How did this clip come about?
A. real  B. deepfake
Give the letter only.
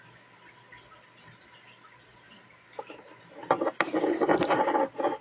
A